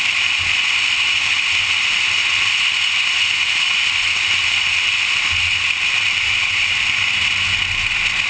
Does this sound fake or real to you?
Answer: real